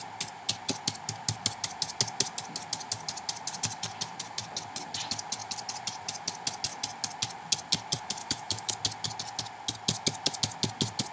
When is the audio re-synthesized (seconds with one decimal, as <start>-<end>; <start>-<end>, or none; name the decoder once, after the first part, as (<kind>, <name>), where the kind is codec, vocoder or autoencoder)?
8.2-8.7 (autoencoder, DAC-VAE)